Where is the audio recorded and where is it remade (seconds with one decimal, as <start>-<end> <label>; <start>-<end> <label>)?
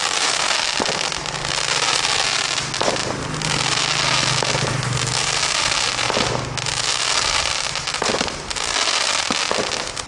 0.0-10.1 recorded